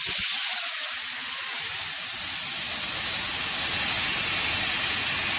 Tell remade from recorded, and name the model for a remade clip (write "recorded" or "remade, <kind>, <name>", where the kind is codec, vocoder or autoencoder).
recorded